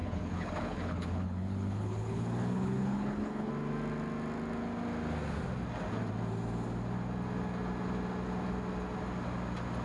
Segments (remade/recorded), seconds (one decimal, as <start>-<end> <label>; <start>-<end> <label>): 0.0-3.5 remade; 3.5-9.8 recorded